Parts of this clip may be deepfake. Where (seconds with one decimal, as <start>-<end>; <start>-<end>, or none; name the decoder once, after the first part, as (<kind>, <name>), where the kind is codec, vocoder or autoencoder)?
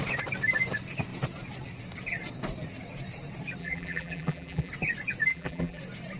3.6-4.7 (vocoder, BigVGAN v2); 5.3-5.8